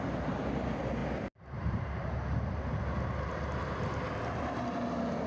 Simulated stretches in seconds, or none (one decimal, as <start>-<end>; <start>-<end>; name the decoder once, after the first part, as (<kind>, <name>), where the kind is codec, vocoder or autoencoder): none